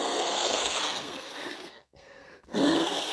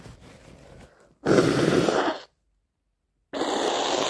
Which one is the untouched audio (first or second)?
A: second